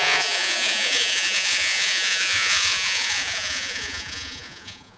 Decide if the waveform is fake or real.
fake